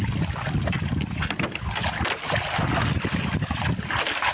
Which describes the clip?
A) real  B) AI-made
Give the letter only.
A